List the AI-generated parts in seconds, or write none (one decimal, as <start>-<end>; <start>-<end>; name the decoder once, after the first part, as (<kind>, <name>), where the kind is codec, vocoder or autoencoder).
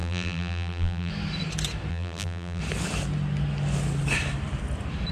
0.0-1.1 (vocoder, BigVGAN v2); 1.9-2.6